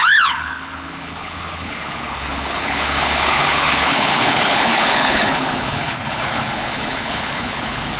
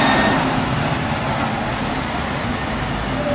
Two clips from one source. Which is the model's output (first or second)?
first